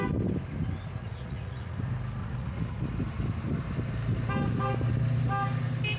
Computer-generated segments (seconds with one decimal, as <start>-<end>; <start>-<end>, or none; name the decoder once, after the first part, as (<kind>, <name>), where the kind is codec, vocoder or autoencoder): 1.0-1.8 (vocoder, Vocos); 2.2-2.8